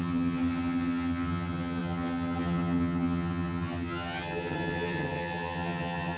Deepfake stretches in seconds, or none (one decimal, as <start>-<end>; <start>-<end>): 0.0-6.2